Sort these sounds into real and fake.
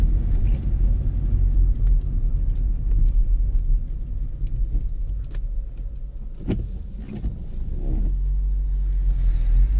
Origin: real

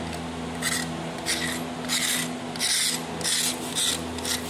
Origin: real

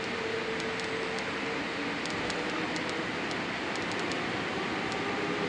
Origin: real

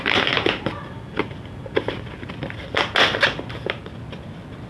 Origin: real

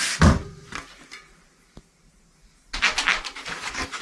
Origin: real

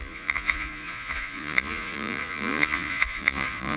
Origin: fake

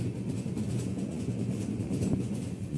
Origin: fake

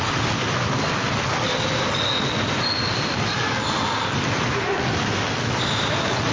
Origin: real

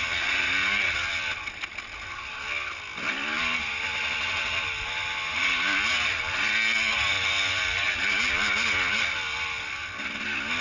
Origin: real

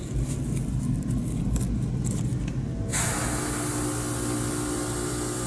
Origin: real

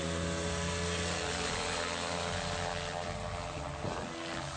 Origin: real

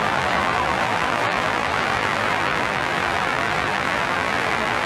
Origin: fake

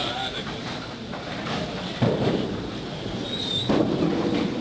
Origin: fake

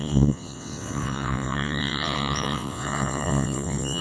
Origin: fake